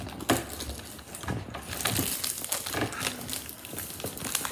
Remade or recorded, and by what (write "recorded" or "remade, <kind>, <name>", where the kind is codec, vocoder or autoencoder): recorded